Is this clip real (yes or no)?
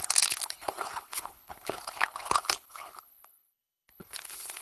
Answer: no